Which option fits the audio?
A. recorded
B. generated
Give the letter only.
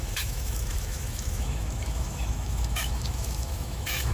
B